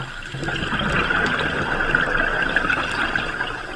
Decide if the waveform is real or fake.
real